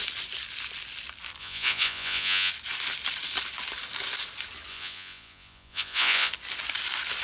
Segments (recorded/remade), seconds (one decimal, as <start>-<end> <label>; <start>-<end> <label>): 0.0-1.4 recorded; 1.4-2.5 remade; 2.5-4.7 recorded; 4.7-6.3 remade; 6.3-7.2 recorded